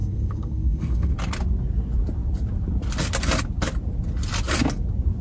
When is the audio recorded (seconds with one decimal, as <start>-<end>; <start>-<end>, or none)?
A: 1.1-5.2